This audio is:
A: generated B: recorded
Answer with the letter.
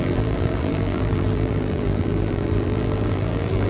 A